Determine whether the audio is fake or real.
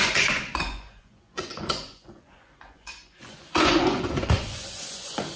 fake